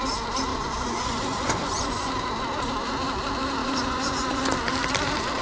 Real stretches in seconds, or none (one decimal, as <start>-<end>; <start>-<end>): 0.0-0.5; 2.1-3.6; 4.4-5.4

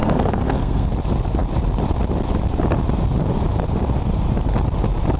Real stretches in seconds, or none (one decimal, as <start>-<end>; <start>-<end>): 0.9-5.2

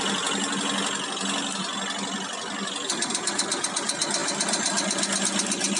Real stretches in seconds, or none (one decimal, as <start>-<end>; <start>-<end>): 0.0-5.8

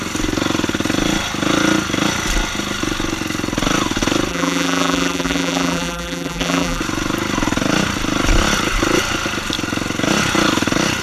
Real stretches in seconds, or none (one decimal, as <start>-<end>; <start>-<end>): 0.0-4.3; 6.8-11.0

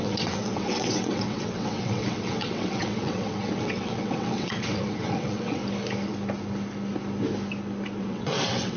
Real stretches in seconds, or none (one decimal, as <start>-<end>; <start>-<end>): 5.6-8.0

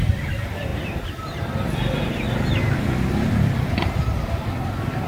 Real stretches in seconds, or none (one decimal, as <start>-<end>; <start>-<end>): 0.0-5.1

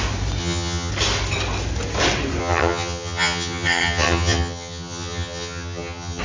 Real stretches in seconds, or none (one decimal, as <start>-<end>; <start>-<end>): 0.0-0.4; 0.9-2.4

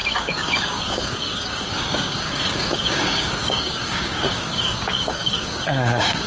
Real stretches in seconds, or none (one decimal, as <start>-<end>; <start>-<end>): none